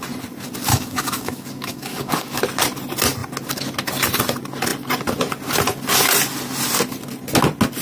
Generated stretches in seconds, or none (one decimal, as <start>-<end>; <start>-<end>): 0.7-2.4